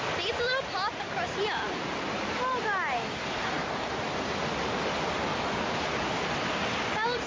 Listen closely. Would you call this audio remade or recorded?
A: recorded